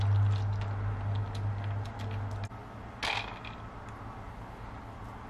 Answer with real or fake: real